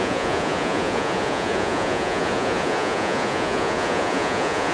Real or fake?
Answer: fake